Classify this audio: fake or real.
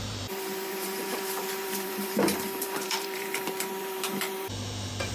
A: fake